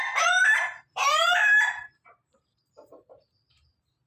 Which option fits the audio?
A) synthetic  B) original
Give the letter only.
A